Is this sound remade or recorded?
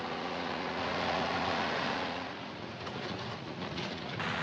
remade